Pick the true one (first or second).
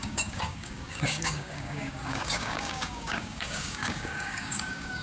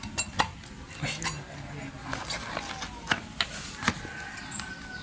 second